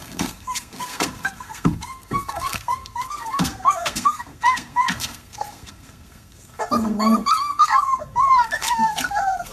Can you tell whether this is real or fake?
fake